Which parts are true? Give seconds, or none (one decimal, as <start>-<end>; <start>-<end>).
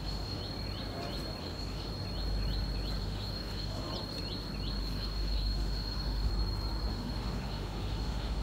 0.4-1.4; 1.9-3.0; 3.9-4.8; 6.3-6.9